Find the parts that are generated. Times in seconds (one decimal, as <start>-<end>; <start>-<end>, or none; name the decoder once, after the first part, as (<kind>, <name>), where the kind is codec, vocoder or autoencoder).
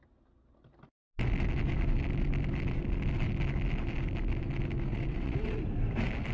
4.9-5.6 (vocoder, WaveNeXt)